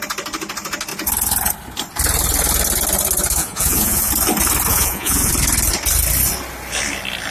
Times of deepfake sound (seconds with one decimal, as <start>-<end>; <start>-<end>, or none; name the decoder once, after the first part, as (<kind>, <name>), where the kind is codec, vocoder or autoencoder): 3.4-4.1 (vocoder, Vocos); 4.7-5.3